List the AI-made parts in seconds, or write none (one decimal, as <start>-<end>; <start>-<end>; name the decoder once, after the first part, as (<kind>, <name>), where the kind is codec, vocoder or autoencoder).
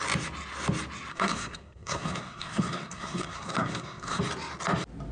1.1-4.2 (codec, SNAC)